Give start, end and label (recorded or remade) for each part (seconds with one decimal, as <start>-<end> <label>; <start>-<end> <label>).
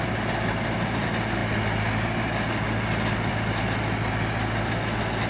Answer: 0.0-5.3 recorded